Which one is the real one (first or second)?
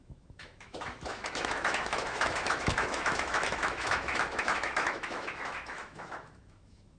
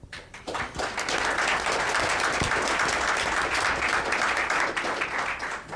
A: second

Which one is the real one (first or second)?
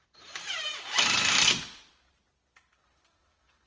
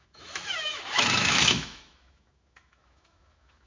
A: first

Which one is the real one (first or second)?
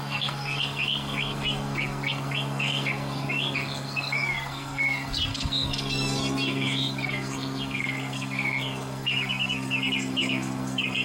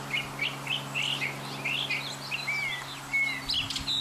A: second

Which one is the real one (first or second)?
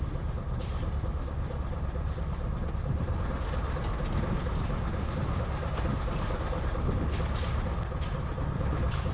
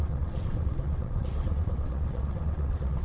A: first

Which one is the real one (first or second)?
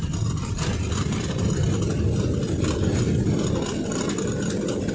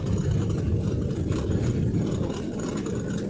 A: first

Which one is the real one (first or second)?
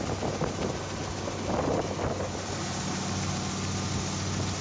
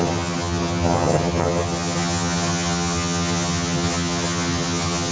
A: first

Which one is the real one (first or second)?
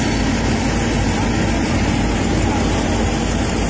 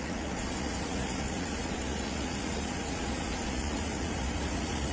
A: first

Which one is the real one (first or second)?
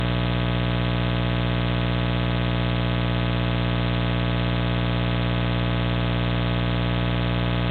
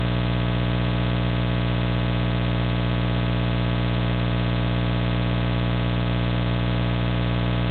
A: first